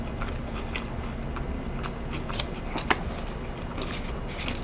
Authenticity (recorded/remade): recorded